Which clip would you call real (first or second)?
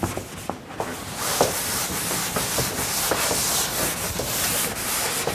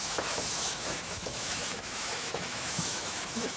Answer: first